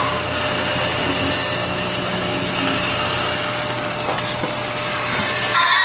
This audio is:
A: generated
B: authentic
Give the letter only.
B